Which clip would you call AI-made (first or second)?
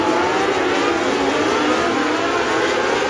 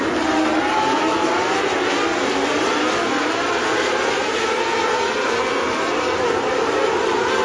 second